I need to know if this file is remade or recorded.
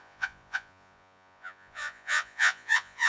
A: remade